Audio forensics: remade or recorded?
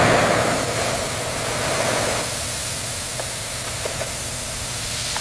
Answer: recorded